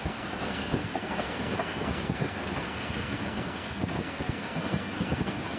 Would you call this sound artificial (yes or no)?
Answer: yes